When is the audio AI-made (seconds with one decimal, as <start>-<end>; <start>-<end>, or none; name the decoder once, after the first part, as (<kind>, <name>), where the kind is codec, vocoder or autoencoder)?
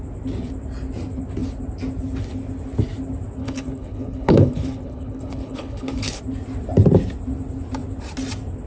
3.4-6.2 (codec, HILCodec)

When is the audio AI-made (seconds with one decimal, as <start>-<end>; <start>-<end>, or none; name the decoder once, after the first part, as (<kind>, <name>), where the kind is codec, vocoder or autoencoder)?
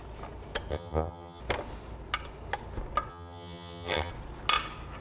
0.7-1.4 (vocoder, HiFi-GAN); 3.1-4.1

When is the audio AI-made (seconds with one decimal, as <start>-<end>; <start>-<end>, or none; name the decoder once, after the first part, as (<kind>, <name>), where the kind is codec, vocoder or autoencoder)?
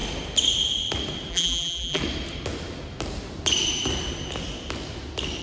1.3-2.0 (vocoder, BigVGAN v2)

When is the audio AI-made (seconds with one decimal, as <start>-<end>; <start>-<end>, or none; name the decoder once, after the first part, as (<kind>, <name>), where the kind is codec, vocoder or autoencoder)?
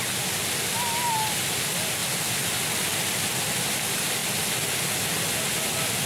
none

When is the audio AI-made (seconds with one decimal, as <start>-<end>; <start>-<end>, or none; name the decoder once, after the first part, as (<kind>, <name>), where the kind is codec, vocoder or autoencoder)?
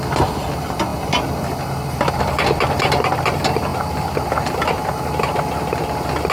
none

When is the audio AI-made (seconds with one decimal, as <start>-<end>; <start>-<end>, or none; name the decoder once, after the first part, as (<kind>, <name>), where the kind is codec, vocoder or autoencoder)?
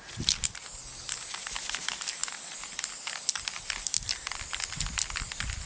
none